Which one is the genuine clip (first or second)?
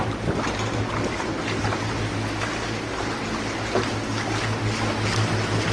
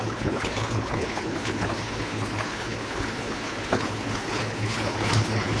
first